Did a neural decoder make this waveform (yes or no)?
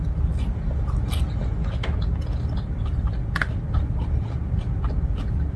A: no